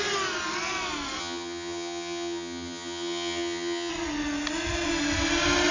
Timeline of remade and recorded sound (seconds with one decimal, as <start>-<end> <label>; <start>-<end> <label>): 0.0-1.2 recorded; 1.2-3.9 remade; 3.9-5.7 recorded